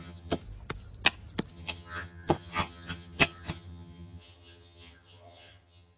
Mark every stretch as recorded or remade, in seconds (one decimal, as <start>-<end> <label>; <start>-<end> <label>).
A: 0.0-0.4 remade; 0.4-1.5 recorded; 1.5-6.0 remade